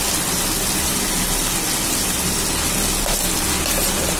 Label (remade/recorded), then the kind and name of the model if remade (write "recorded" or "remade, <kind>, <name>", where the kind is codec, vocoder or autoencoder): recorded